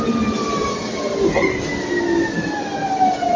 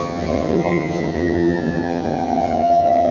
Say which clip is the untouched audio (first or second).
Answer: first